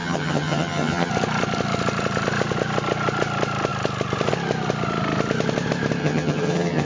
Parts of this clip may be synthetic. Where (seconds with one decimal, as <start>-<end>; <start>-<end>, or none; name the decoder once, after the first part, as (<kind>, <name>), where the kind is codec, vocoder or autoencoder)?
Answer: 0.0-1.1 (vocoder, HiFi-GAN); 6.0-6.9